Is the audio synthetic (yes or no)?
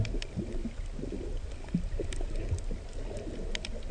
no